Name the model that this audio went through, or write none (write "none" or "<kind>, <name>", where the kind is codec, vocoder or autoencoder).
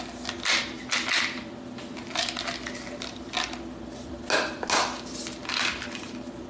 none